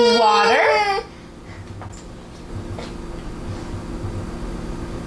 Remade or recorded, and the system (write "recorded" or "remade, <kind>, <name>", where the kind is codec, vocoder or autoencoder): recorded